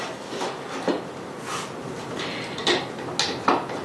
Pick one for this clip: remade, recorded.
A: recorded